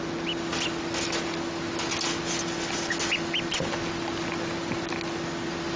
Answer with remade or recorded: recorded